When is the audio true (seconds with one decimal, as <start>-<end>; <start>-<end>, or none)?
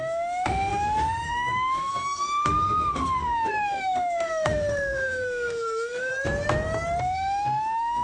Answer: 6.1-7.0